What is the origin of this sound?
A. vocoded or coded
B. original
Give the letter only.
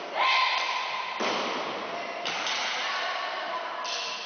B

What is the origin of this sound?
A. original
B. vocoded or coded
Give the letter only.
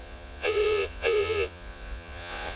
B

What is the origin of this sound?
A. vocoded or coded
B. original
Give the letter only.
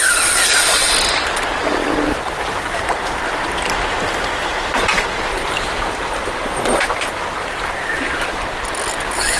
B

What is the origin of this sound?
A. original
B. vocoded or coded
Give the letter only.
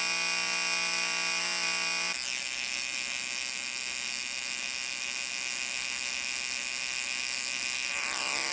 A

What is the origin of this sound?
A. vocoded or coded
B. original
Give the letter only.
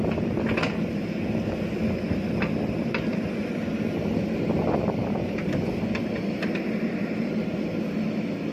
B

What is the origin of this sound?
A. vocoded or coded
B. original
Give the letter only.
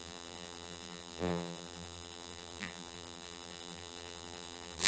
A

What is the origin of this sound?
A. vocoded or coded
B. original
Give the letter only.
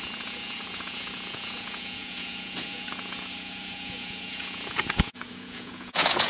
A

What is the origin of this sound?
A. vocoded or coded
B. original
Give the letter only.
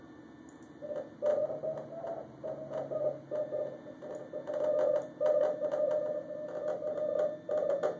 B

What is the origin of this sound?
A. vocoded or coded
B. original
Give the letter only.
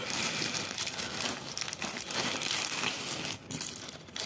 B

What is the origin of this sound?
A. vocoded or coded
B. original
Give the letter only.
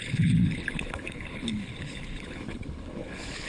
A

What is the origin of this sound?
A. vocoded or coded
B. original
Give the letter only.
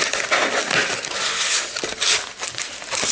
B